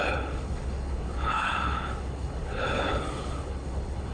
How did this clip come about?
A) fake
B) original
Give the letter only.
A